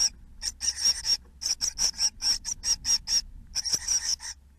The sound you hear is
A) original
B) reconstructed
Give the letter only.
A